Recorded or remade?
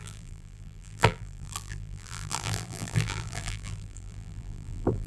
remade